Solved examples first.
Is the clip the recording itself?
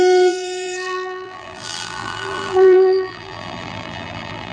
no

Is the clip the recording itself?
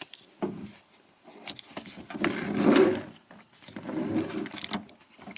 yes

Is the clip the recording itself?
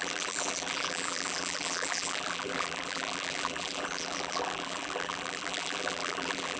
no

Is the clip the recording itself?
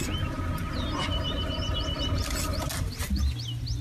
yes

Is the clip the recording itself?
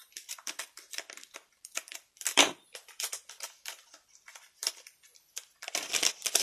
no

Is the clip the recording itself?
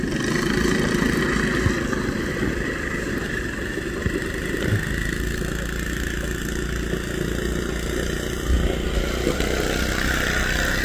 yes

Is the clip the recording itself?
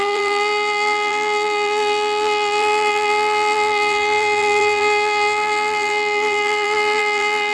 no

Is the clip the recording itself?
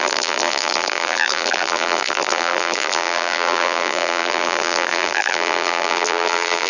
no